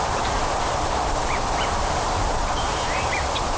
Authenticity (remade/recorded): remade